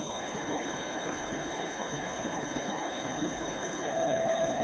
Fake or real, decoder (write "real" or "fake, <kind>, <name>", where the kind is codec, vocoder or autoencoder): fake, codec, HILCodec